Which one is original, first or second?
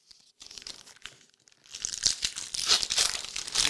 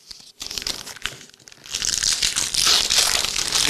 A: second